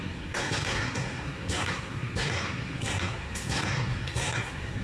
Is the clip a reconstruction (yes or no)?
yes